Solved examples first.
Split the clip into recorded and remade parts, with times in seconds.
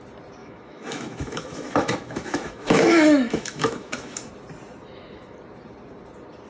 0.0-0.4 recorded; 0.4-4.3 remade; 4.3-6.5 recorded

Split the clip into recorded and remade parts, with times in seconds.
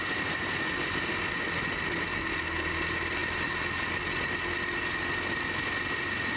0.0-3.2 recorded; 3.2-4.0 remade; 4.0-6.4 recorded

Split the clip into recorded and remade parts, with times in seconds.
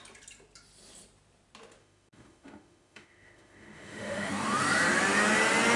0.0-1.8 recorded; 1.8-4.3 remade; 4.3-5.8 recorded